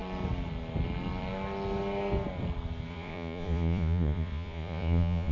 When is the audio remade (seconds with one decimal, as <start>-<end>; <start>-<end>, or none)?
2.9-5.3